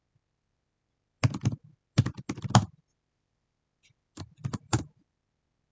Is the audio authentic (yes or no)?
yes